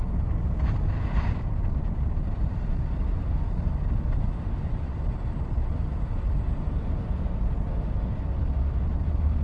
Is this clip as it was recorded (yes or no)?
yes